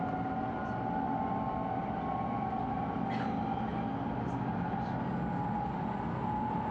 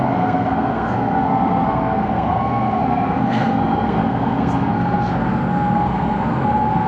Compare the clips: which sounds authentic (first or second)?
first